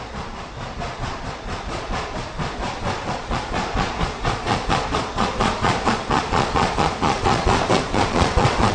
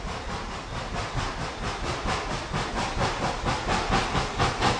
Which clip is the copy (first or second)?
first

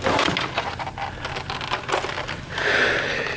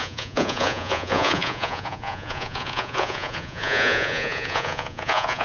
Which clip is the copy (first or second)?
second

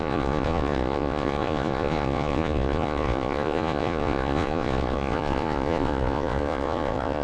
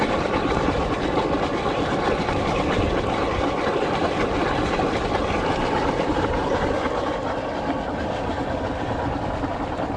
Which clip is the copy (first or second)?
first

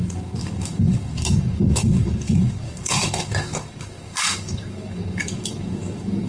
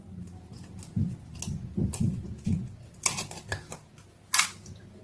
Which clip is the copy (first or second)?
first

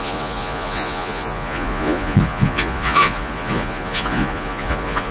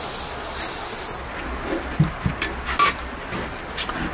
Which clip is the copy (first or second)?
first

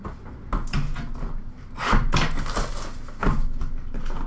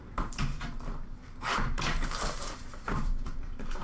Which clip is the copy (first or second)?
second